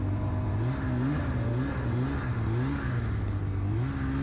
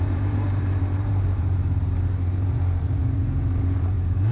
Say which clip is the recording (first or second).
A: first